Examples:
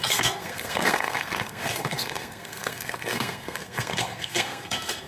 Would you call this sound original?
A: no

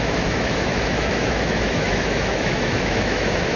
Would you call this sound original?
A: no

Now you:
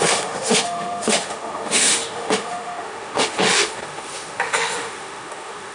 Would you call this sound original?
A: no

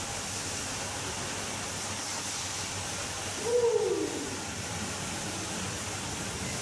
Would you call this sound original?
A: yes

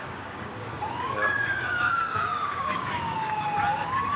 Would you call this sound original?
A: no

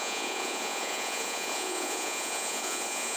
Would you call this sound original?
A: no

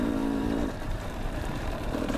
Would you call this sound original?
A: no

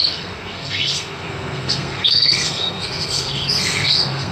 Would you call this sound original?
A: no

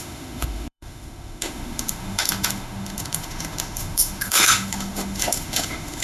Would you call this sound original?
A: no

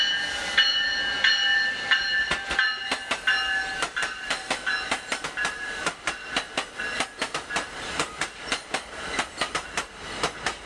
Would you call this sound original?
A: yes